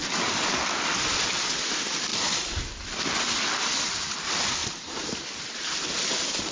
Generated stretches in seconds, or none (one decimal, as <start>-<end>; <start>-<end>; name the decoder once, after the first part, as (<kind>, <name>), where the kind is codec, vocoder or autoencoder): 0.0-2.1 (vocoder, BigVGAN v2); 4.1-6.5